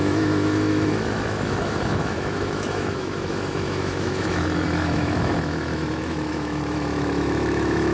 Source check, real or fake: fake